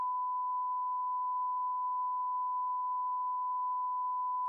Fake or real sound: fake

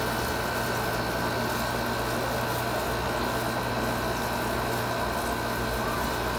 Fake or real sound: real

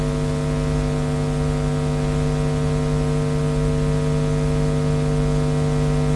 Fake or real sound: real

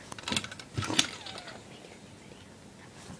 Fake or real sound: real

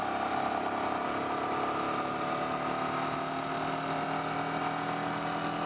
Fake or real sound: real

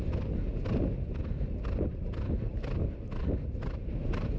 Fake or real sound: real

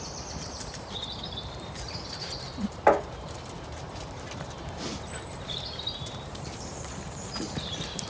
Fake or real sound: fake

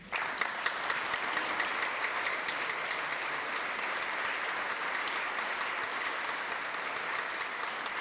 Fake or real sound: real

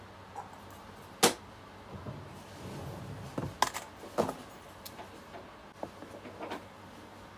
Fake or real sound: real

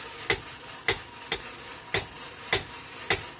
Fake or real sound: real